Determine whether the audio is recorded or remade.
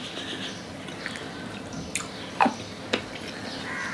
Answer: recorded